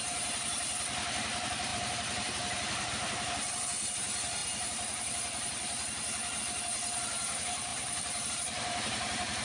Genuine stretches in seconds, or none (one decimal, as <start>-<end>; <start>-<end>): none

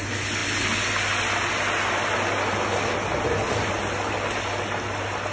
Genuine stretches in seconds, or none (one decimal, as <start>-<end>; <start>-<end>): 0.0-5.3

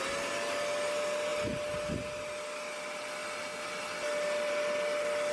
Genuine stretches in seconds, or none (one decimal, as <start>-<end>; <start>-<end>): 0.0-5.3

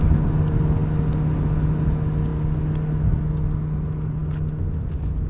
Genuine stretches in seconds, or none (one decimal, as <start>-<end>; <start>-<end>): 0.0-5.3

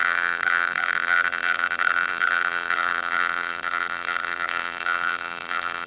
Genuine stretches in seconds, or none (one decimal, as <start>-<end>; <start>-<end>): none

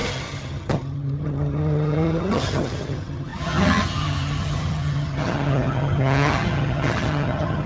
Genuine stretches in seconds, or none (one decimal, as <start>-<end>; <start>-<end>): none